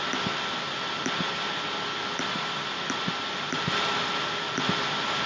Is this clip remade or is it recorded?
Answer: recorded